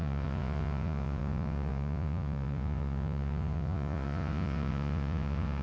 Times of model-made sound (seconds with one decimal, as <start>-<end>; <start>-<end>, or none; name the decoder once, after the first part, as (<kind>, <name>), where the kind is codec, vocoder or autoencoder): 0.0-5.6 (vocoder, Vocos)